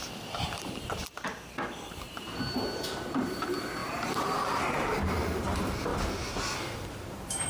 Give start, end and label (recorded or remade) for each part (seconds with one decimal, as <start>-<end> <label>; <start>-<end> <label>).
0.0-5.9 remade; 5.9-7.1 recorded; 7.1-7.5 remade